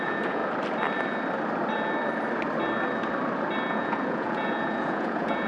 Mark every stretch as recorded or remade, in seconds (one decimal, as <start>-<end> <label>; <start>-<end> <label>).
0.0-0.4 remade; 0.4-3.7 recorded; 3.7-5.5 remade